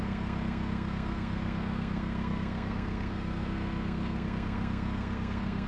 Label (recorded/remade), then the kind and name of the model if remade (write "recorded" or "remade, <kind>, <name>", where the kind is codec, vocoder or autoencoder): remade, codec, SNAC